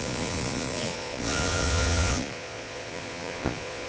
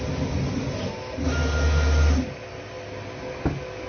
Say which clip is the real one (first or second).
second